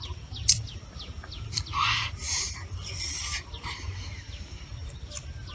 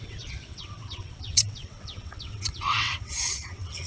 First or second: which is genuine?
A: first